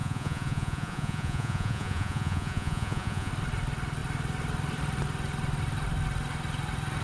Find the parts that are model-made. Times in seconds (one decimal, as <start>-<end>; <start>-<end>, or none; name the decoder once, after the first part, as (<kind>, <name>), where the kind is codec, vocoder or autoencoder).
0.0-3.3 (vocoder, Vocos)